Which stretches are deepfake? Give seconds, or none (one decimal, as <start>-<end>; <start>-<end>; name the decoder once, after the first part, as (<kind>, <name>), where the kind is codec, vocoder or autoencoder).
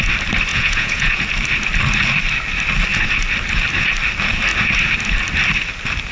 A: 0.5-1.2 (vocoder, Vocos)